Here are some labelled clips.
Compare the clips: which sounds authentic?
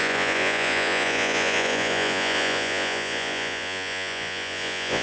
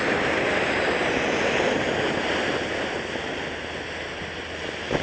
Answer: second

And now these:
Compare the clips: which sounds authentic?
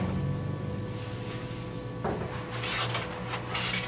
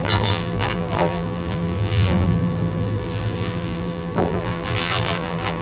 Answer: first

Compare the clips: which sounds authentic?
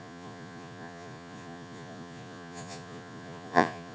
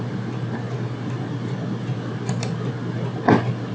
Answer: second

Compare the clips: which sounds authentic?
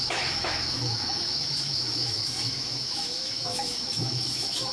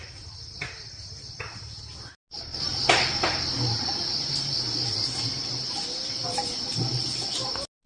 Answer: second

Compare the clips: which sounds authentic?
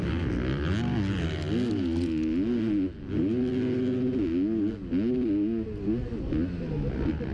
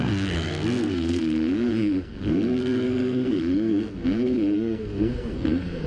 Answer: first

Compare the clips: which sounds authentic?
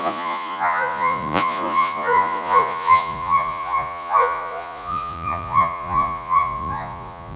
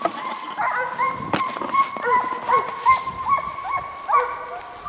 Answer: second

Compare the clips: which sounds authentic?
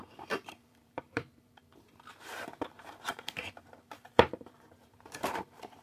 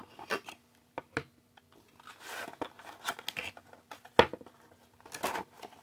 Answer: second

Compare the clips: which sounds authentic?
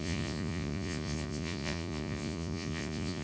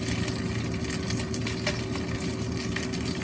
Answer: second